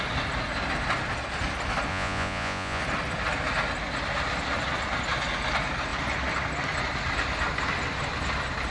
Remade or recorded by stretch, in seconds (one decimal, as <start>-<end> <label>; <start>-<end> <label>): 0.0-1.9 recorded; 1.9-2.8 remade; 2.8-8.7 recorded